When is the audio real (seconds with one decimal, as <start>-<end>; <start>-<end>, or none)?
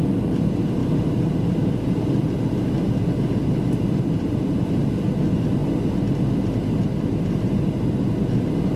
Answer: 0.0-8.8